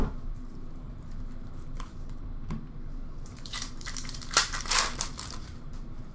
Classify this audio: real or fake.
fake